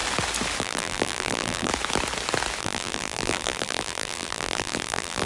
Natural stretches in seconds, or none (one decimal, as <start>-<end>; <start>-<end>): 0.0-0.6; 1.7-2.6